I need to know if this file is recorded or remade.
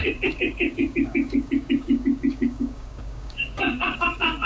remade